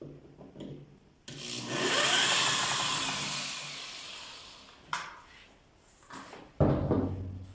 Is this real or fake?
real